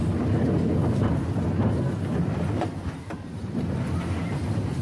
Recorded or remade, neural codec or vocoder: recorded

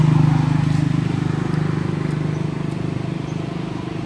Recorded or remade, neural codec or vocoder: recorded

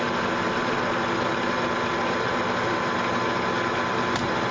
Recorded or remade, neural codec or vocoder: recorded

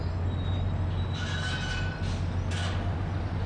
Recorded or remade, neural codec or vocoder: recorded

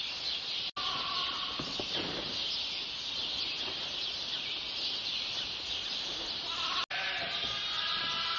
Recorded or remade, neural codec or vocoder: recorded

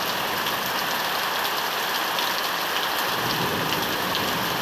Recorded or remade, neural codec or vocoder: recorded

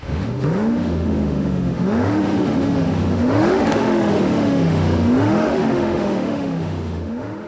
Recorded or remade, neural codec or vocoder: remade, autoencoder, DAC-VAE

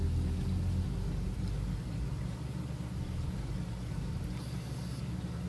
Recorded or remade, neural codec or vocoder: recorded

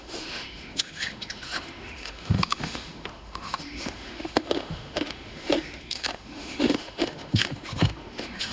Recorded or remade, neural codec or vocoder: remade, autoencoder, DAC-VAE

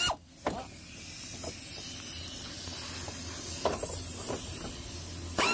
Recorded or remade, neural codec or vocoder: recorded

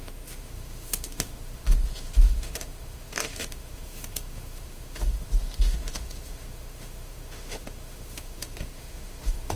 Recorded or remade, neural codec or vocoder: remade, autoencoder, DAC-VAE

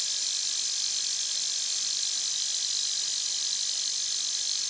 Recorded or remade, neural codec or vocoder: recorded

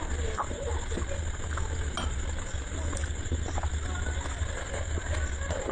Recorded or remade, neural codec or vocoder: recorded